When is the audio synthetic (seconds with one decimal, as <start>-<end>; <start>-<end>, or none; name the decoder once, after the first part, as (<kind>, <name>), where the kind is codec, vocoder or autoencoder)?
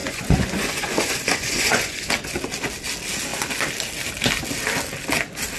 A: 0.0-2.1 (vocoder, Vocos)